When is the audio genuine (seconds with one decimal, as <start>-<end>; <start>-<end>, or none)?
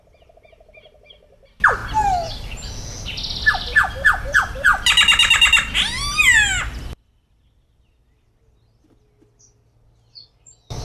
0.0-10.8